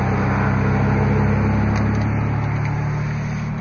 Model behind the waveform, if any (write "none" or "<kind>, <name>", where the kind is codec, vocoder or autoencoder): none